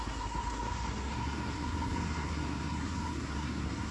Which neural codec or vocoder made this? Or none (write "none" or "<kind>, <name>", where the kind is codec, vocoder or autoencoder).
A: codec, SNAC